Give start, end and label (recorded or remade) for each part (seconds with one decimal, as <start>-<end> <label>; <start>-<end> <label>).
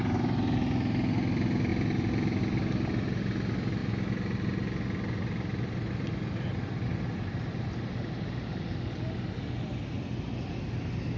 0.0-11.2 recorded